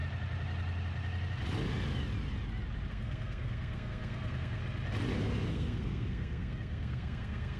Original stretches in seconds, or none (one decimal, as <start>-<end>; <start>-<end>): 0.0-2.9; 4.6-5.5